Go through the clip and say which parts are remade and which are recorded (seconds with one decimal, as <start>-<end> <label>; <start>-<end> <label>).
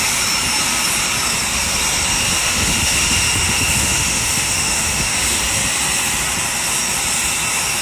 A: 0.0-2.3 recorded; 2.3-5.4 remade; 5.4-7.8 recorded